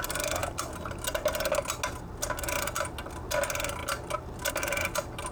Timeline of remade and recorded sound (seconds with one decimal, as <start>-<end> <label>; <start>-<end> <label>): 0.0-5.3 recorded